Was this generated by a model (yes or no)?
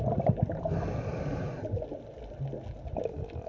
no